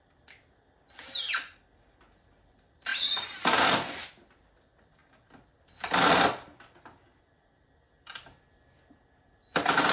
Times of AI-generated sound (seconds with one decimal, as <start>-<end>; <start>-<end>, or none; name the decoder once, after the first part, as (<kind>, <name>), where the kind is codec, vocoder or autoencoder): none